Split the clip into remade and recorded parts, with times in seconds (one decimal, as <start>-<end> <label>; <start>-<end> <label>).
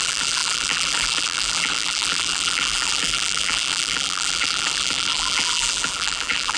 0.0-6.6 remade